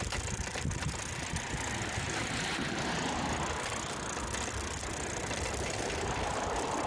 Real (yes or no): yes